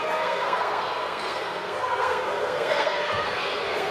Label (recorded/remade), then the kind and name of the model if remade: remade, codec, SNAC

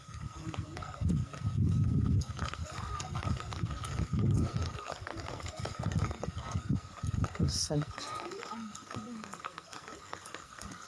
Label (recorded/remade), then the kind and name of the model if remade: remade, codec, SNAC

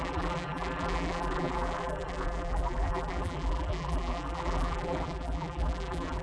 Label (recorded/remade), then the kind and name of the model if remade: remade, vocoder, BigVGAN v2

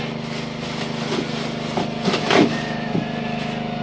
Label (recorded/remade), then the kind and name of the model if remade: recorded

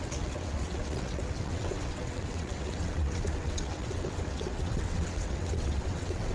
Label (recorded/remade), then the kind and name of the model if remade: remade, vocoder, WaveNeXt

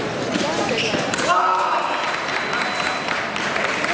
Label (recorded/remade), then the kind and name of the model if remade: recorded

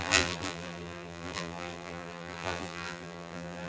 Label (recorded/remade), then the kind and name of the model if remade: remade, vocoder, BigVGAN v2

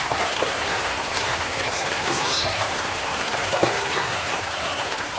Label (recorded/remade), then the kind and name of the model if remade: remade, codec, SNAC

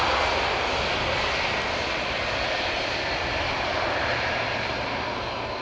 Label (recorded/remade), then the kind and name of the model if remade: recorded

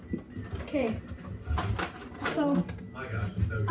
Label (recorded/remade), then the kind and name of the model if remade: recorded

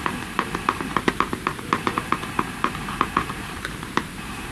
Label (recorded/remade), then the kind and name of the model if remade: remade, vocoder, BigVGAN v2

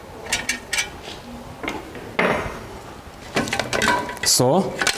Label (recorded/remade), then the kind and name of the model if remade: recorded